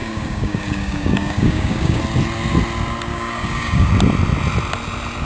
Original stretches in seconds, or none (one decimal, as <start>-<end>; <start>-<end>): 2.0-3.1; 3.9-5.2